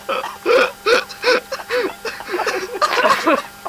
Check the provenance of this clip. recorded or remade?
recorded